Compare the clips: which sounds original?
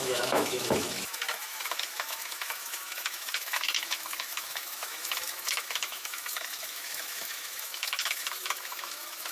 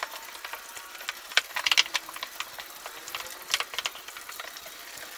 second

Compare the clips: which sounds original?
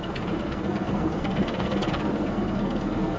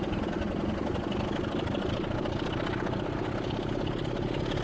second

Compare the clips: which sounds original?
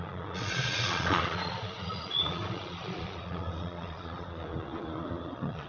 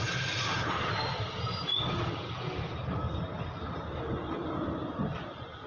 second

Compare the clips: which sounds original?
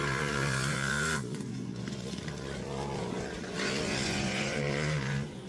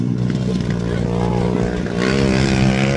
second